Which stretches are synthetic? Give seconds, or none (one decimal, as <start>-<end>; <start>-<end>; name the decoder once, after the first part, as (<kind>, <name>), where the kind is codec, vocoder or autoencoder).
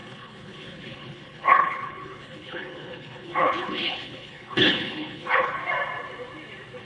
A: 0.0-5.6 (codec, HILCodec)